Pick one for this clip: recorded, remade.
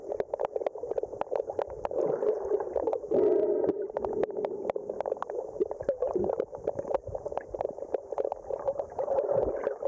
recorded